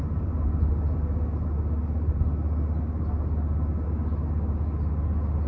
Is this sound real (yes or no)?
yes